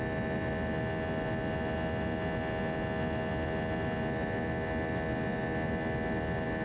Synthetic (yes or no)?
no